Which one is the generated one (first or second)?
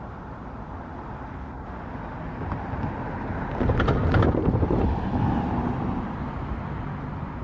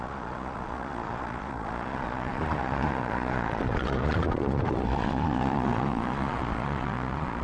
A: second